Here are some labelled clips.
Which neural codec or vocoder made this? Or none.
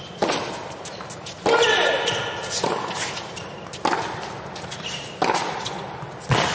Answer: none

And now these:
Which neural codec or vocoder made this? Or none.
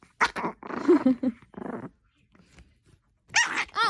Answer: none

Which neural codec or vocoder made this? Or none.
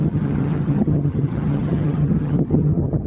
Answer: vocoder, HiFi-GAN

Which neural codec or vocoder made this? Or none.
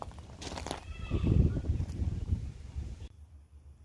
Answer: none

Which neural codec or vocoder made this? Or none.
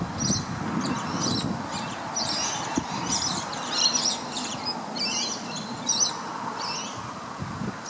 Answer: none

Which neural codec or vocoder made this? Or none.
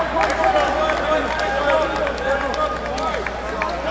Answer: none